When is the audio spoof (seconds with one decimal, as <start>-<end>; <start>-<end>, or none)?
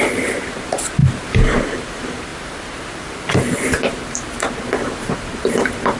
0.0-6.0